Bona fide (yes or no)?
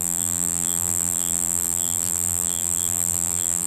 no